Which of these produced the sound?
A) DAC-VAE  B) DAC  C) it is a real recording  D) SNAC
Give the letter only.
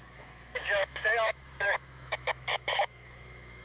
A